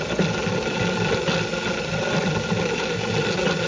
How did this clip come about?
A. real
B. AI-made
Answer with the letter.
A